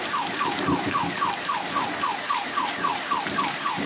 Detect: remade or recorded remade